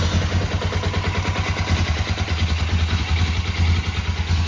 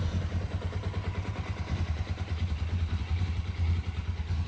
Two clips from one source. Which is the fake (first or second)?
second